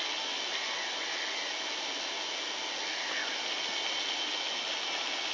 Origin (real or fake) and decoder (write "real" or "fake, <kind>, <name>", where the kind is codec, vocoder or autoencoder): real